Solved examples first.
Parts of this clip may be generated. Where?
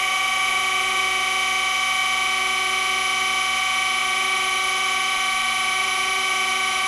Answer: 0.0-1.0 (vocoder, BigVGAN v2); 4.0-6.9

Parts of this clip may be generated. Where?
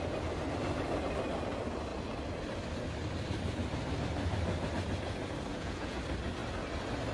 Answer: 5.5-6.0 (vocoder, Vocos)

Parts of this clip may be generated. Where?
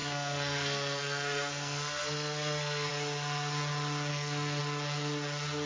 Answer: 0.0-2.9 (codec, SNAC); 4.1-4.6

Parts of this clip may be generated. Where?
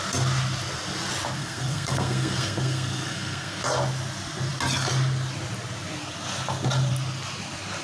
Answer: 1.4-3.6 (codec, SNAC)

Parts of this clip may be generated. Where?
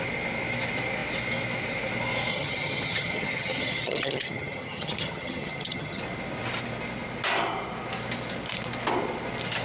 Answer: 2.3-6.0 (vocoder, HiFi-GAN)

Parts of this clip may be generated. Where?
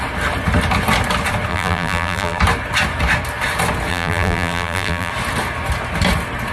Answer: 1.5-2.4 (vocoder, BigVGAN v2); 3.9-5.1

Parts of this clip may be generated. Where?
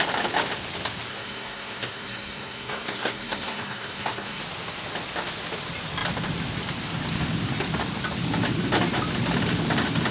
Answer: 1.1-4.4 (codec, SNAC)